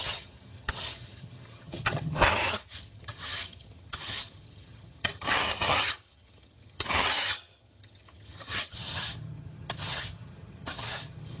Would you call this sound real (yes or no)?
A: no